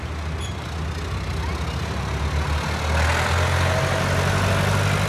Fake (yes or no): no